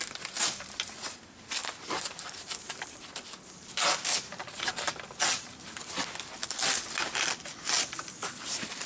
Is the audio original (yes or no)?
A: yes